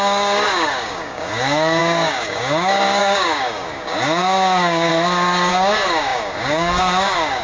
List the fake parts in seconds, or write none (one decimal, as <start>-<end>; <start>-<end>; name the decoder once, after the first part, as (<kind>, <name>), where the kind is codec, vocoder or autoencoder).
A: 0.0-4.9 (codec, DAC); 5.5-7.4